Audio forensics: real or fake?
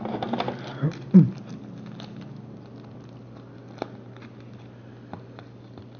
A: real